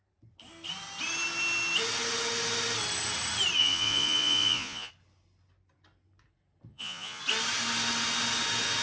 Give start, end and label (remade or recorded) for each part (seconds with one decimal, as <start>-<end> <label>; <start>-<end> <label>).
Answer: 0.0-3.6 recorded; 3.6-4.9 remade; 4.9-6.7 recorded; 6.7-7.2 remade; 7.2-8.8 recorded

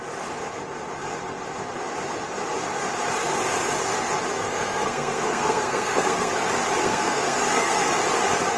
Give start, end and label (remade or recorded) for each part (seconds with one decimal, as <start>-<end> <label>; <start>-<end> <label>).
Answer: 0.0-4.4 recorded; 4.4-6.3 remade; 6.3-6.8 recorded; 6.8-7.9 remade; 7.9-8.6 recorded

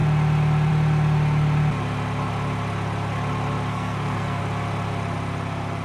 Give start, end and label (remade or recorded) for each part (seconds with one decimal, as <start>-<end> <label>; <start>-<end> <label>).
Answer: 0.0-3.7 recorded; 3.7-4.4 remade; 4.4-5.8 recorded